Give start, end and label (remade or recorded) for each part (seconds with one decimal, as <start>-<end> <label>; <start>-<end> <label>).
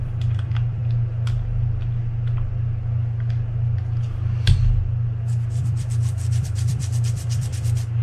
0.0-0.8 remade; 0.8-5.6 recorded; 5.6-8.0 remade